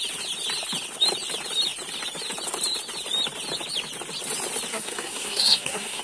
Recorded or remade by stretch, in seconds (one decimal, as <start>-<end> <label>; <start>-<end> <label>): 0.0-4.7 recorded; 4.7-6.0 remade